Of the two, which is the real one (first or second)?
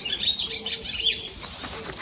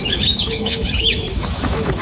first